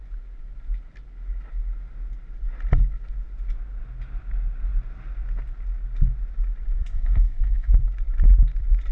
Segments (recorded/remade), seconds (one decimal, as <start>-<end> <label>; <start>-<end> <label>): 0.0-6.8 recorded; 6.8-7.7 remade; 7.7-8.9 recorded